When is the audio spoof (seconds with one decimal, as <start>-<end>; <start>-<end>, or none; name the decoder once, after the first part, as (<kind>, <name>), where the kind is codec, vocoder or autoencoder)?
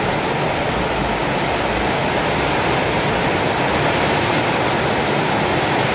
none